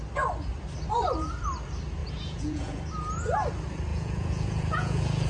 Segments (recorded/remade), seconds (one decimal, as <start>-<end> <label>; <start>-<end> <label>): 0.0-2.0 recorded; 2.0-2.8 remade; 2.8-3.9 recorded; 3.9-5.3 remade